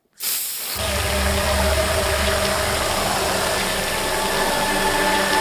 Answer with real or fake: real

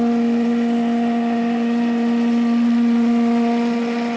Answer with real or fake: real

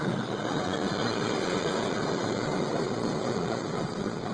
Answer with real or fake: fake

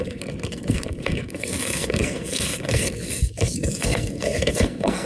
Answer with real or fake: fake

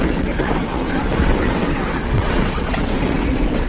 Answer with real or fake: fake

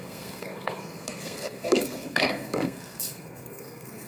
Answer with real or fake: fake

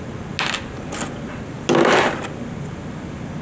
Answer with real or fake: real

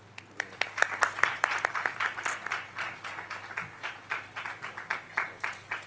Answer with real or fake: real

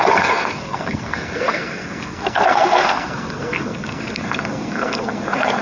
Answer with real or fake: fake